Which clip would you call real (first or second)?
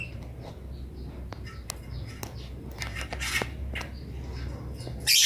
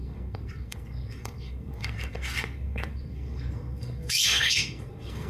first